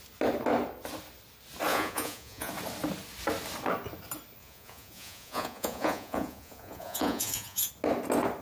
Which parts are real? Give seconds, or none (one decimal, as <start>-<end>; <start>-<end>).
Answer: 0.0-1.7; 2.5-4.4; 7.7-8.4